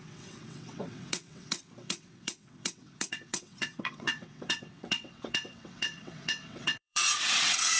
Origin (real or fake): fake